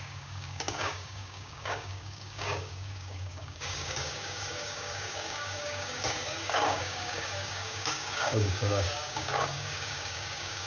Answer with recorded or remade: remade